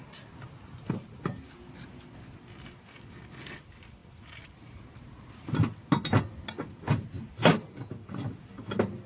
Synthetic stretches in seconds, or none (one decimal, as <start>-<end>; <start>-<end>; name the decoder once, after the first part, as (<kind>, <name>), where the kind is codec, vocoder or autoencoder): none